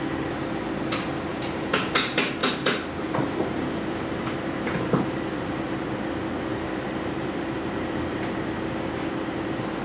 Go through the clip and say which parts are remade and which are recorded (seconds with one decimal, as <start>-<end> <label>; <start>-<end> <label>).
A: 0.0-1.3 recorded; 1.3-1.9 remade; 1.9-2.4 recorded; 2.4-5.8 remade; 5.8-6.5 recorded; 6.5-8.2 remade; 8.2-9.8 recorded